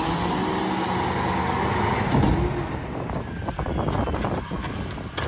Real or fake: real